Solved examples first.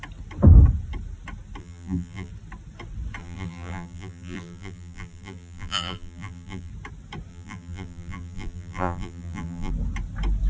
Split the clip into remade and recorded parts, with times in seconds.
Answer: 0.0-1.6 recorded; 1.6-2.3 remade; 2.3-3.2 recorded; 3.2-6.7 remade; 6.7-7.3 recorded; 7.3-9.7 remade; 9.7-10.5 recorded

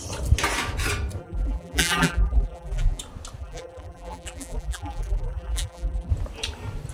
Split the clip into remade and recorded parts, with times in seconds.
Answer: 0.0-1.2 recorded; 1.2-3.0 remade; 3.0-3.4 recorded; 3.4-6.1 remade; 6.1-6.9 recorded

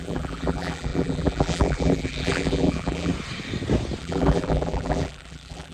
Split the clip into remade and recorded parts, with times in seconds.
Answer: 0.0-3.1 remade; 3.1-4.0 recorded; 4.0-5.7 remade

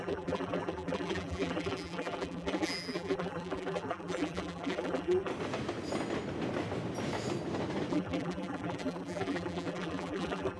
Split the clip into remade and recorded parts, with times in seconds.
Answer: 0.0-5.3 remade; 5.3-7.9 recorded; 7.9-10.6 remade